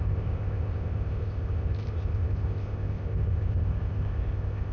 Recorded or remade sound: remade